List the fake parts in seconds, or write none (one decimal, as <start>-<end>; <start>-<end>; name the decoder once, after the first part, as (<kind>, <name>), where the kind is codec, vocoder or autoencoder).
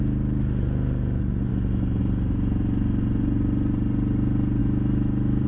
4.6-5.5 (autoencoder, DAC-VAE)